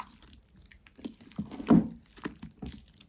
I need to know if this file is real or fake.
real